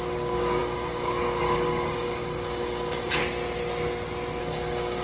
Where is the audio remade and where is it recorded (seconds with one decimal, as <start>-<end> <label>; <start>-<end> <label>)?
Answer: 0.0-3.2 remade; 3.2-4.4 recorded; 4.4-5.0 remade

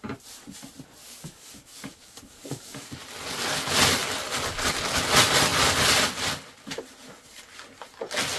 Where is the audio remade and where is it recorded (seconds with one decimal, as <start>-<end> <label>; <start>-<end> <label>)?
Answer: 0.0-1.0 recorded; 1.0-3.0 remade; 3.0-8.4 recorded

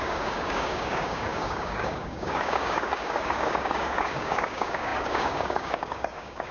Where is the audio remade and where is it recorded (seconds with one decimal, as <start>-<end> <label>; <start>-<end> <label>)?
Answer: 0.0-6.5 remade

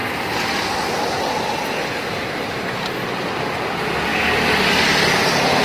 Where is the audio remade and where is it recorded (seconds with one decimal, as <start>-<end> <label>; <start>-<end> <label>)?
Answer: 0.0-4.1 recorded; 4.1-4.7 remade; 4.7-5.6 recorded

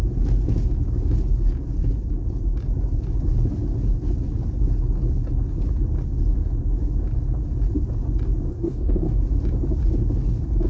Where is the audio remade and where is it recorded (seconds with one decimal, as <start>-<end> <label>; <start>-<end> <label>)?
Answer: 0.0-8.5 recorded; 8.5-9.2 remade; 9.2-10.7 recorded